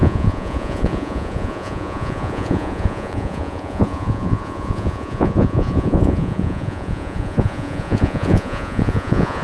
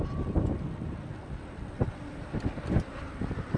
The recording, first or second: second